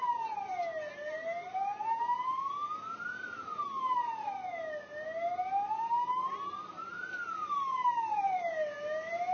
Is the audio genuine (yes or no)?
yes